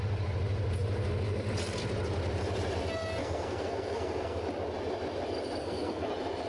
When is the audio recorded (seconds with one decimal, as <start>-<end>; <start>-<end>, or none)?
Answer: 0.0-3.2; 4.4-5.6; 6.1-6.5